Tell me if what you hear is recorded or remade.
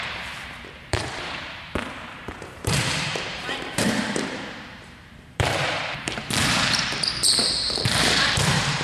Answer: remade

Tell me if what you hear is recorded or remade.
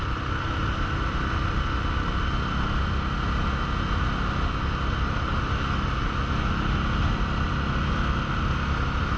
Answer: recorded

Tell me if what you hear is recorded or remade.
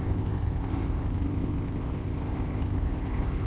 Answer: remade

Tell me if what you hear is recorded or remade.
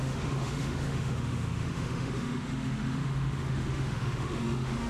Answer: remade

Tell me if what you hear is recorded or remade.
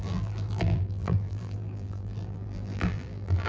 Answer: remade